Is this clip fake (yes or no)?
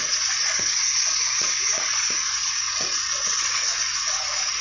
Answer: yes